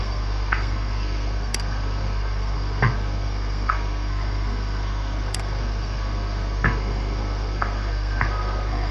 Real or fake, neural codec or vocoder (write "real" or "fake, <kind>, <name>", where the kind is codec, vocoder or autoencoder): fake, codec, SNAC